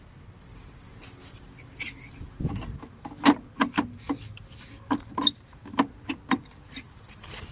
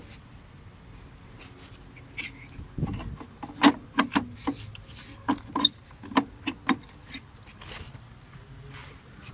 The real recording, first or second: second